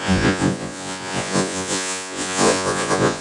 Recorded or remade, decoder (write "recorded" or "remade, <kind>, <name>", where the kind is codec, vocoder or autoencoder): remade, vocoder, Vocos